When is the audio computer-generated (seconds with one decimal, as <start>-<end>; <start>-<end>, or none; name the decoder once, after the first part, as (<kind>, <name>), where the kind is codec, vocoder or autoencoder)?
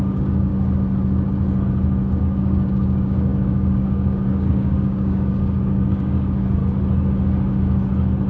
0.0-0.5 (codec, DAC); 2.2-6.6